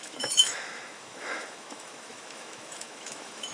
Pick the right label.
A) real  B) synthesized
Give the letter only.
B